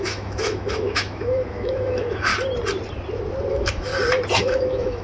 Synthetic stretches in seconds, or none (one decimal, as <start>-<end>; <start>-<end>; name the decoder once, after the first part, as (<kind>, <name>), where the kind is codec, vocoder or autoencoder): 0.0-2.3 (autoencoder, DAC-VAE); 3.5-3.9; 4.4-5.0